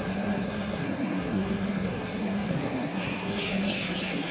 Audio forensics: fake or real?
fake